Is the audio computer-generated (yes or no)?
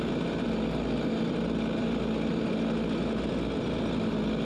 no